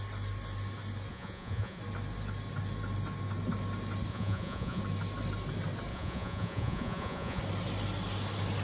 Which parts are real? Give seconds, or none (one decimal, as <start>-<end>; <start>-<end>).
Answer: 0.0-1.1; 1.8-4.1; 4.8-5.9; 7.4-8.6